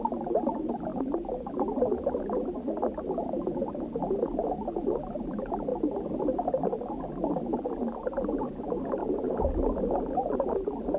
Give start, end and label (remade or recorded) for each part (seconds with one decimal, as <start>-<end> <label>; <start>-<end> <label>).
0.0-11.0 recorded